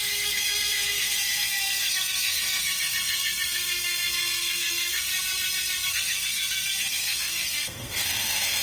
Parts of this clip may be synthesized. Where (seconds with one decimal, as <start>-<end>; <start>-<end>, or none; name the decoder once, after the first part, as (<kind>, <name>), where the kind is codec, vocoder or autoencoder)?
0.0-5.1 (codec, SNAC); 5.9-8.6